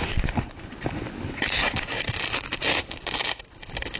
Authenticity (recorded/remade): recorded